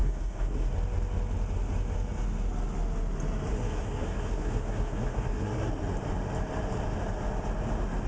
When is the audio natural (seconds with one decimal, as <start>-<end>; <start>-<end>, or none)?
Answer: 0.7-3.5; 5.7-8.1